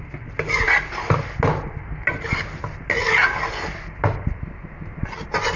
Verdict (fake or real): real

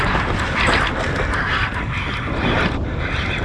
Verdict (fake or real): real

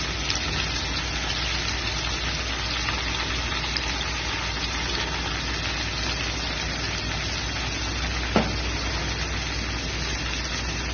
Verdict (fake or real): real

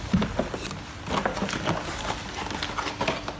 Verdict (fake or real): real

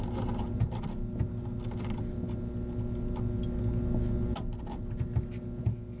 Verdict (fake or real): real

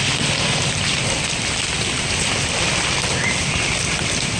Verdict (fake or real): real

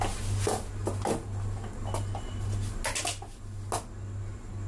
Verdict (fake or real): real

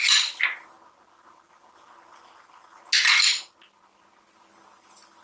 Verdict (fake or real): real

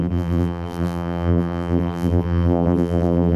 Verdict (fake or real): fake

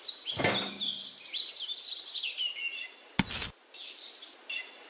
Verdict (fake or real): real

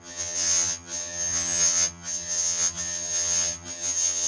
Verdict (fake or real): fake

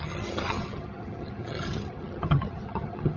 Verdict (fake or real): fake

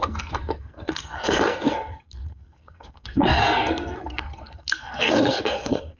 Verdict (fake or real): fake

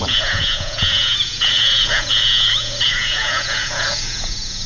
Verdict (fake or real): fake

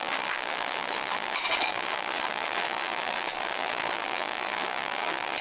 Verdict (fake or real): fake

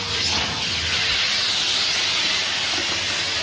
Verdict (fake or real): real